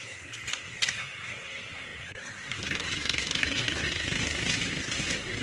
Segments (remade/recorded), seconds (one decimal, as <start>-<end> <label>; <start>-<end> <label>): 0.0-5.4 remade